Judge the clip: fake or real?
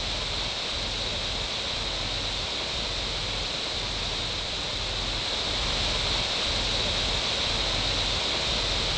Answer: real